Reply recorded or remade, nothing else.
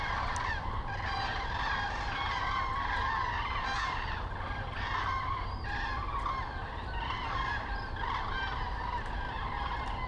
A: recorded